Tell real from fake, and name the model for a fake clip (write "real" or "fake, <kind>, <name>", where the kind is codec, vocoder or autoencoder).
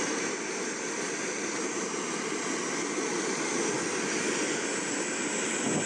real